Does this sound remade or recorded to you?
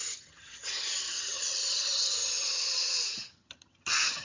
remade